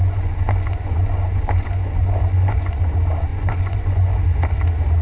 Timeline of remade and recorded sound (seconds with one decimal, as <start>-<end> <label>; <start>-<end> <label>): 0.0-2.8 remade; 2.8-3.3 recorded; 3.3-4.2 remade; 4.2-5.0 recorded